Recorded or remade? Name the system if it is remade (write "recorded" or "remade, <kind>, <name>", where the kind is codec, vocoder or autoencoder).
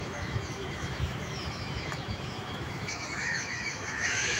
remade, autoencoder, DAC-VAE